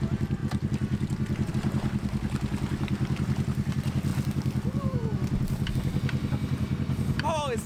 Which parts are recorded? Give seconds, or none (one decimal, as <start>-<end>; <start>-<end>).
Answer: 0.0-7.7